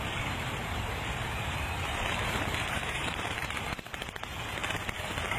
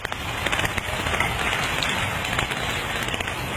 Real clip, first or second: second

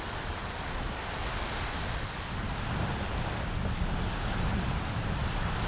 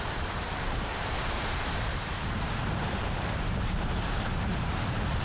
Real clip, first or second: first